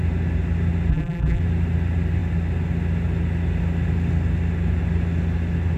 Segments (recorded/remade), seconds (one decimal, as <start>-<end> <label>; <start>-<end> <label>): 0.0-0.9 recorded; 0.9-1.4 remade; 1.4-5.8 recorded